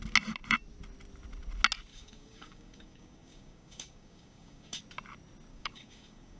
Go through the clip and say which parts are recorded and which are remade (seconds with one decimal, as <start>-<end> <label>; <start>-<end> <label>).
0.0-1.9 recorded; 1.9-4.8 remade; 4.8-5.5 recorded; 5.5-6.4 remade